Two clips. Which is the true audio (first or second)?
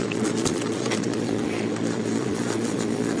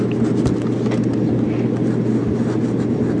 second